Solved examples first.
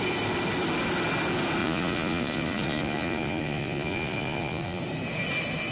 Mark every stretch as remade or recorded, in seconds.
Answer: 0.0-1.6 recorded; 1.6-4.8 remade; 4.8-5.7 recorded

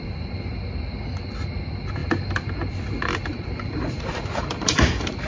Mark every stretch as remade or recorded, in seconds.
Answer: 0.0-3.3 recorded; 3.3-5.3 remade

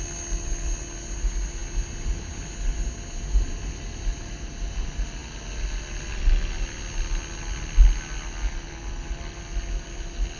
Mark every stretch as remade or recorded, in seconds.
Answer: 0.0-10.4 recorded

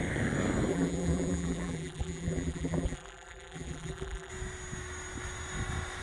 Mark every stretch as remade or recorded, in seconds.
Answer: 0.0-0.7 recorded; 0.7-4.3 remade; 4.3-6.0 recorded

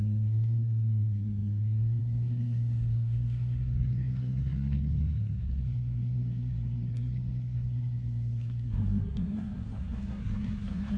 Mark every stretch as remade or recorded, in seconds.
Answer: 0.0-11.0 remade